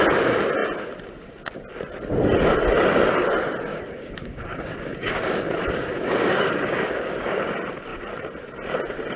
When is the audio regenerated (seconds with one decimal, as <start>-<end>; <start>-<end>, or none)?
3.7-7.5